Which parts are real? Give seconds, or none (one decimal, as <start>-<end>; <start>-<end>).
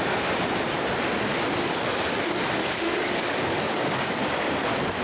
0.0-2.6; 4.2-5.0